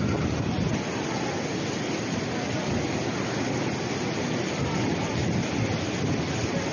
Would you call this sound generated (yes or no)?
no